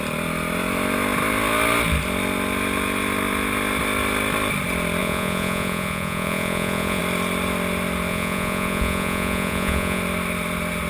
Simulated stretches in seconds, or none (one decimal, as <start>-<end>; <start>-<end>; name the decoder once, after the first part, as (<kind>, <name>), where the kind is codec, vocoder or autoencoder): 5.0-7.0 (vocoder, Vocos); 8.1-10.0

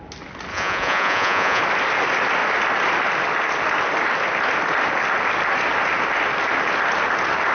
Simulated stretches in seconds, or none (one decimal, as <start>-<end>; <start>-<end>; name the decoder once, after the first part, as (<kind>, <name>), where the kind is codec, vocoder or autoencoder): 0.5-1.6 (vocoder, Vocos)

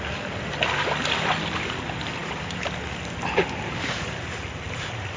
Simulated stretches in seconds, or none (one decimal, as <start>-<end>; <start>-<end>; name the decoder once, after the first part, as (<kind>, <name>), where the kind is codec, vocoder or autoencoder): none

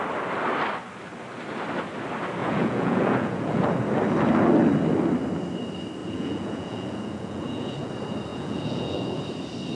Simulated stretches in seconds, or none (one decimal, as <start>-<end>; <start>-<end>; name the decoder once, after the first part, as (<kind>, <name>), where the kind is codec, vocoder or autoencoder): 2.4-3.7 (vocoder, Vocos); 6.0-7.9; 8.3-9.2

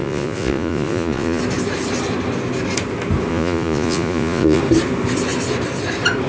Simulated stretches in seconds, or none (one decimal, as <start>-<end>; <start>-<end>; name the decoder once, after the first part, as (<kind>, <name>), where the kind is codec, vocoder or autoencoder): 0.0-1.4 (vocoder, Vocos); 3.3-4.6

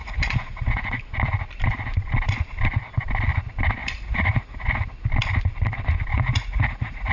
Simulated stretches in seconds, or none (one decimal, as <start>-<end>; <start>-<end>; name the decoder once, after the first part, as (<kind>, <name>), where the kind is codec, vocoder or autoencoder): 0.0-1.0 (vocoder, Vocos); 3.8-4.8; 6.1-7.1

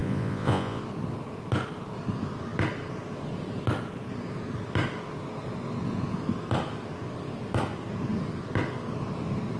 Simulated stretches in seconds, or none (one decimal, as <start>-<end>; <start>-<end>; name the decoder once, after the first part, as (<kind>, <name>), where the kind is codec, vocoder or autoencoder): 0.0-0.8 (vocoder, Vocos)